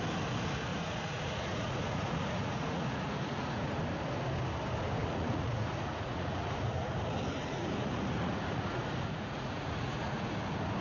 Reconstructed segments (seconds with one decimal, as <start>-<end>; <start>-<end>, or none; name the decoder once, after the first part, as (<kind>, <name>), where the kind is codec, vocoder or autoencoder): 0.7-3.8 (vocoder, Vocos); 5.0-6.9; 7.4-10.3